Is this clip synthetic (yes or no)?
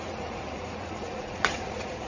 yes